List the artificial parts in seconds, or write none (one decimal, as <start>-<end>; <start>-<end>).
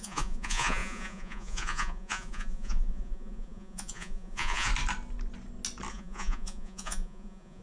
0.0-4.7; 5.9-7.6